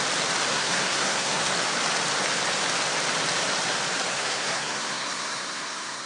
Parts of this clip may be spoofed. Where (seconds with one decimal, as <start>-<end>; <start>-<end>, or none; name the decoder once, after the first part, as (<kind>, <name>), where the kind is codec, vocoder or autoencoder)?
0.5-1.5 (codec, SNAC); 4.1-6.1